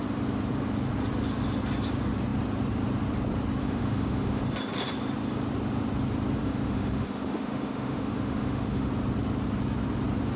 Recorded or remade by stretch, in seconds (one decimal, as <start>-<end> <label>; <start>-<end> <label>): 0.0-3.6 recorded; 3.6-4.4 remade; 4.4-6.4 recorded; 6.4-8.9 remade; 8.9-10.4 recorded